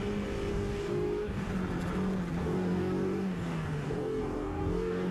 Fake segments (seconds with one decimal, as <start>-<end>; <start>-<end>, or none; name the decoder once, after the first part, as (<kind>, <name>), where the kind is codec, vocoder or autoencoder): 0.5-1.5 (codec, DAC); 2.4-5.1